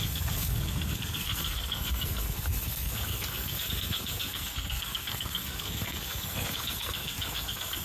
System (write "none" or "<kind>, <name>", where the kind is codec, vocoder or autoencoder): codec, SNAC